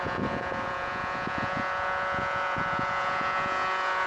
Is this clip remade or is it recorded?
remade